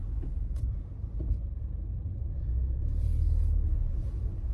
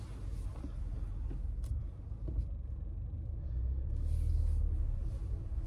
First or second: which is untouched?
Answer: second